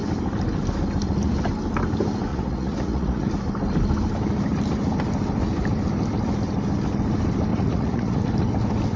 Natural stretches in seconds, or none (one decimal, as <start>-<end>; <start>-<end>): 0.0-2.3; 3.3-7.5; 8.2-9.0